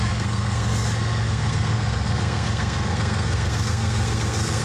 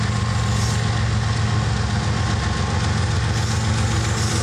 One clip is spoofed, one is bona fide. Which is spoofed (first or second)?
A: first